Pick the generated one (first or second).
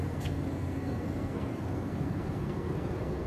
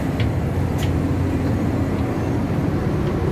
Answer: first